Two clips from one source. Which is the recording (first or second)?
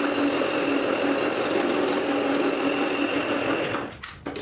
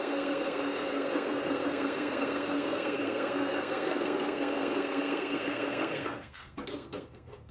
first